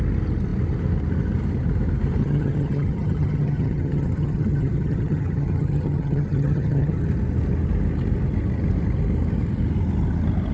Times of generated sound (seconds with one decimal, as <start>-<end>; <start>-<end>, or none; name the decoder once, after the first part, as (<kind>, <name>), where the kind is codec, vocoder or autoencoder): 2.2-7.0 (vocoder, HiFi-GAN)